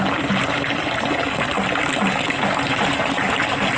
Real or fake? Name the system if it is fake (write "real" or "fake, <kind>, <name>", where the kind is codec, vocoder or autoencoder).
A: real